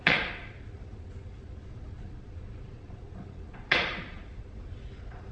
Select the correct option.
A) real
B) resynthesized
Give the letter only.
B